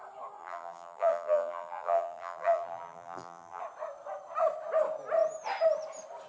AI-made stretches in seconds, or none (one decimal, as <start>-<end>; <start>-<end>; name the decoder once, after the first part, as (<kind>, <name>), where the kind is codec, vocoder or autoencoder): 0.4-3.6 (vocoder, BigVGAN v2)